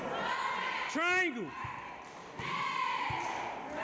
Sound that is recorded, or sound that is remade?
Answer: recorded